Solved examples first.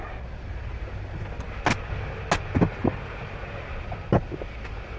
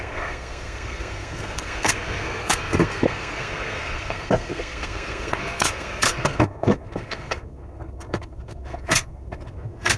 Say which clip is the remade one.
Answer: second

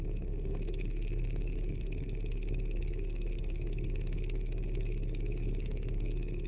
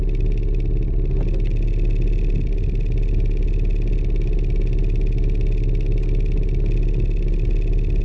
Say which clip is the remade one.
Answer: first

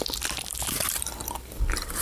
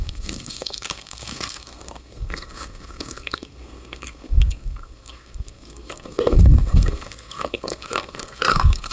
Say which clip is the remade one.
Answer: second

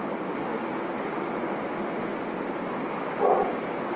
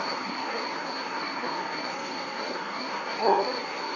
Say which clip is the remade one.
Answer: second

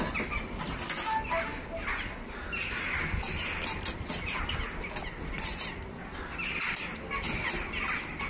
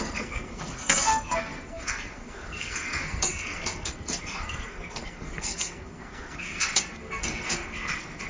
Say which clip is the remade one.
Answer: second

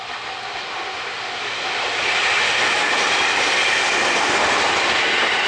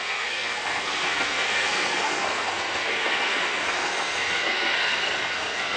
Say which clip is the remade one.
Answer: second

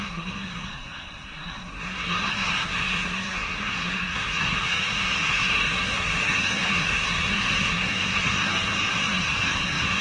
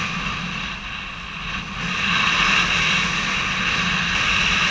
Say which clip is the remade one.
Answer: first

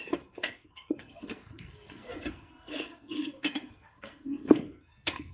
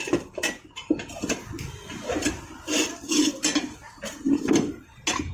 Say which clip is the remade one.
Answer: first